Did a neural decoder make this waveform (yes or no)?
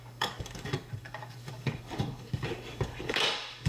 yes